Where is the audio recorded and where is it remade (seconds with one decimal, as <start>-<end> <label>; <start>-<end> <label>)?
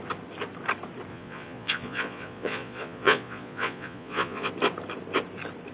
0.0-1.1 recorded; 1.1-4.5 remade; 4.5-5.7 recorded